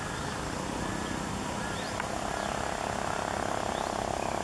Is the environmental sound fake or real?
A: real